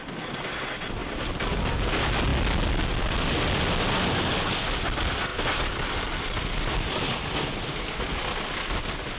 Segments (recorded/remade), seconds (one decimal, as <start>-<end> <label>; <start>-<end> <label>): 0.0-9.2 recorded